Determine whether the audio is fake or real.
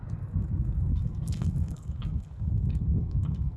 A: fake